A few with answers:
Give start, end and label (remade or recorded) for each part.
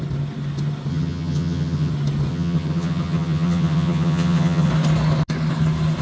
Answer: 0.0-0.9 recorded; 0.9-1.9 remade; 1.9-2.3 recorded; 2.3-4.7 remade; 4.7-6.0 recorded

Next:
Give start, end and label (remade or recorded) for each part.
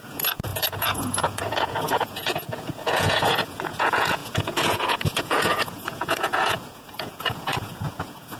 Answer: 0.0-8.4 remade